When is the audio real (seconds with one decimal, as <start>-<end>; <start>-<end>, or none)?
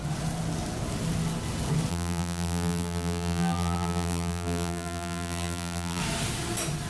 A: 0.0-1.9; 6.0-6.9